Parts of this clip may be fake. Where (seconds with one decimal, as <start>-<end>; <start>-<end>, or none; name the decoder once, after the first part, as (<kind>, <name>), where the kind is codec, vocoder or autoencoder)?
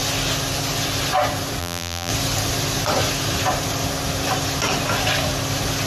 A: 1.6-2.1 (vocoder, BigVGAN v2)